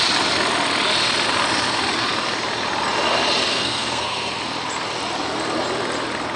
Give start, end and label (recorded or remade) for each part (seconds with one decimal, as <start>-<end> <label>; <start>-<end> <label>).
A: 0.0-3.5 recorded; 3.5-4.3 remade; 4.3-6.4 recorded